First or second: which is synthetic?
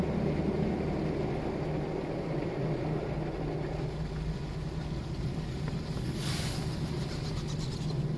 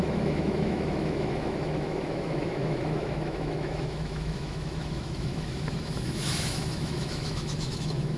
second